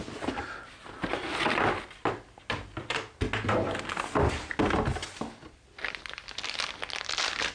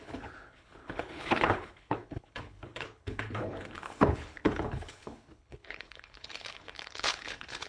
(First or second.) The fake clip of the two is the second